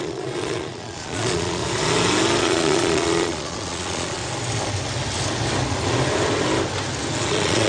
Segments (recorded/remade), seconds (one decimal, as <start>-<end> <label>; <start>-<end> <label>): 0.0-1.6 remade; 1.6-2.4 recorded; 2.4-4.2 remade; 4.2-7.3 recorded; 7.3-7.7 remade